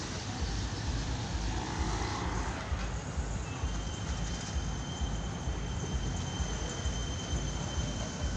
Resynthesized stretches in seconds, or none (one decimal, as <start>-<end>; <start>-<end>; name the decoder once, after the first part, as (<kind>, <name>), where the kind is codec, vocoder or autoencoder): none